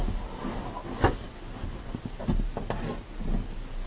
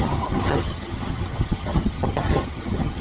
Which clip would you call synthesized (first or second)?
second